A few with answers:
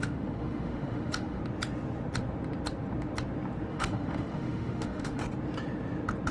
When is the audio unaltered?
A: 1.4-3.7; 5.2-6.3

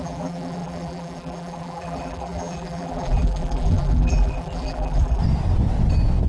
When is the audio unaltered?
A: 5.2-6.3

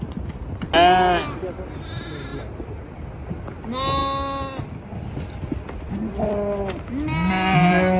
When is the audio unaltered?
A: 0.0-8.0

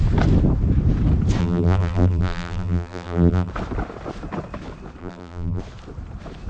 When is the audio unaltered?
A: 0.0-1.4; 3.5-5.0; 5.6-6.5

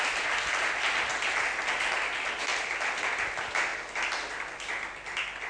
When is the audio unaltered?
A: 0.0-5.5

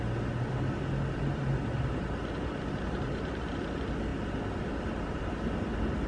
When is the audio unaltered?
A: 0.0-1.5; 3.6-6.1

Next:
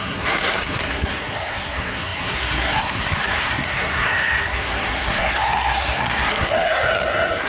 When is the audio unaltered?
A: none

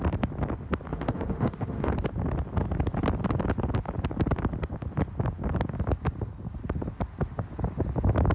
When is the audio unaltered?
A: 0.0-0.9; 1.9-8.3